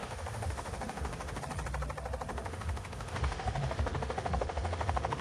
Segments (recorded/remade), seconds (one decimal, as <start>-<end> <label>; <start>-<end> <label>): 0.0-1.4 remade; 1.4-2.3 recorded; 2.3-5.2 remade